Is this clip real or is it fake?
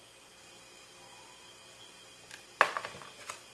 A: real